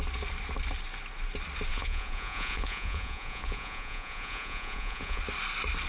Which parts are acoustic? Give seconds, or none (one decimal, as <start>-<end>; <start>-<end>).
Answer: 0.0-1.7; 5.2-5.9